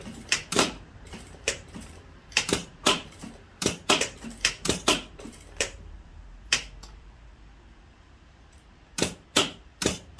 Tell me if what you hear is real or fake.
fake